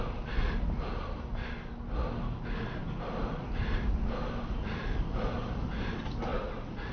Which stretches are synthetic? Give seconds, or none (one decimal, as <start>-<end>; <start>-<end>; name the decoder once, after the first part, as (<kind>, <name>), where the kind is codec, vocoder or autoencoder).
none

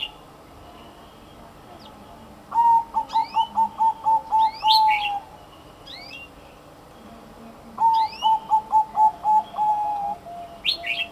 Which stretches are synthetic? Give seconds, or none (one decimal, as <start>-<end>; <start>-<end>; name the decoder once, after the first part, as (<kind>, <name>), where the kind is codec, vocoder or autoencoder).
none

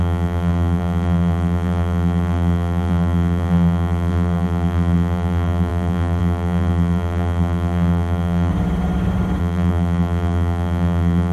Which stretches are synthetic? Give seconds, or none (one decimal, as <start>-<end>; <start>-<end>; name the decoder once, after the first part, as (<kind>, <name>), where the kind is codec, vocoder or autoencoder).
0.0-8.5 (vocoder, BigVGAN v2); 9.4-11.3

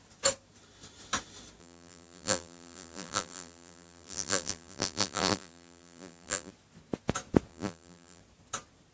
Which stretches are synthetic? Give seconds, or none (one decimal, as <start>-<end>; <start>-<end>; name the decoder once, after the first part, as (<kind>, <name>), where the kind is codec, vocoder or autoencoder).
1.6-6.5 (vocoder, BigVGAN v2); 7.5-8.2